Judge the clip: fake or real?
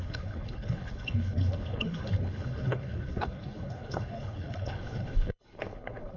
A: fake